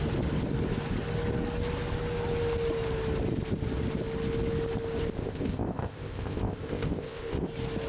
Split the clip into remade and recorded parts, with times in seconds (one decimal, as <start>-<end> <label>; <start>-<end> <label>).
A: 0.0-5.2 recorded; 5.2-7.5 remade; 7.5-7.9 recorded